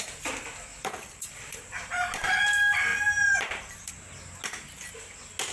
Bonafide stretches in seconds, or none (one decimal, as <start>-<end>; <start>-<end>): 0.0-0.7; 2.1-2.9; 3.9-5.5